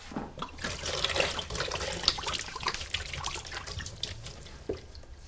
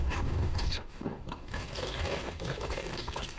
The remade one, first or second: second